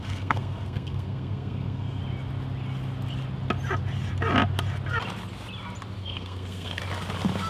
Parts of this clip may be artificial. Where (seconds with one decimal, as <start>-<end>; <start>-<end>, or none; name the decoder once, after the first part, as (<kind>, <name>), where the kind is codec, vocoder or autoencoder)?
0.0-2.0 (codec, SNAC); 6.0-6.8